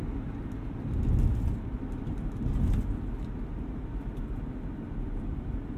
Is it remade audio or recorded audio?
recorded